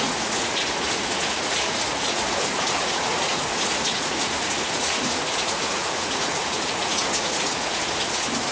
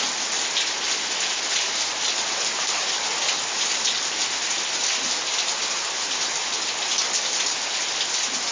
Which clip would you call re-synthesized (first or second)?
first